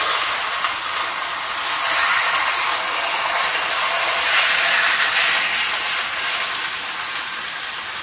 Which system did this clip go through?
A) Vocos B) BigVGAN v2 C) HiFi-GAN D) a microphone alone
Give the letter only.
D